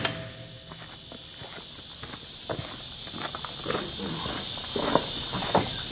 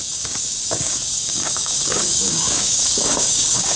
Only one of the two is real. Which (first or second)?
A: first